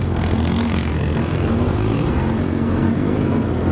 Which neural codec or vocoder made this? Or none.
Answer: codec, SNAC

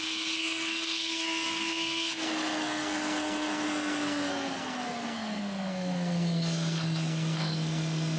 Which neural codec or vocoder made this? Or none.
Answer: codec, SNAC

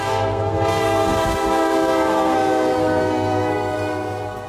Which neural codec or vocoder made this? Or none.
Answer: codec, SNAC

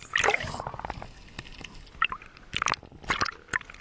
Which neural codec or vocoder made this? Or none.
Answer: none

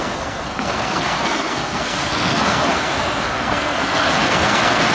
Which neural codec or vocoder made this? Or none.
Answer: codec, SNAC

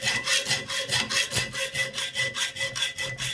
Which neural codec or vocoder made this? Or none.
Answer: none